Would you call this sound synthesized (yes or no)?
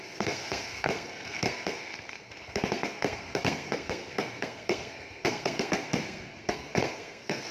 yes